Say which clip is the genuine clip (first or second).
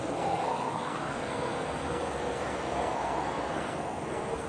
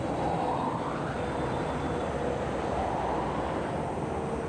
second